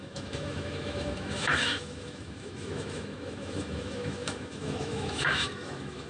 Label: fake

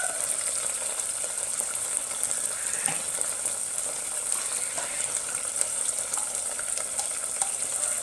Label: fake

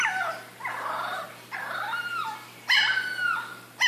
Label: real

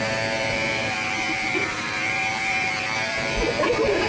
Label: fake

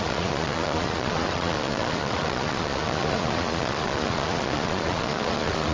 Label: fake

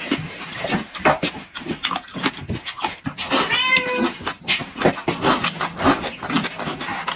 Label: real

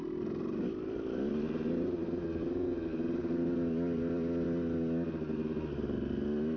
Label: real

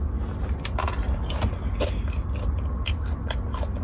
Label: real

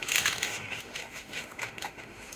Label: fake